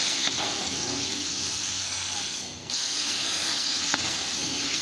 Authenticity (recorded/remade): remade